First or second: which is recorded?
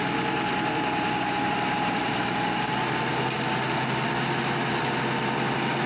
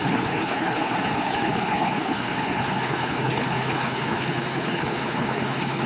first